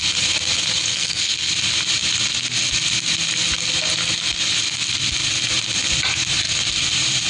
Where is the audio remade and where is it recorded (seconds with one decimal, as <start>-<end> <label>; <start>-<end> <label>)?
0.0-0.9 recorded; 0.9-1.5 remade; 1.5-7.3 recorded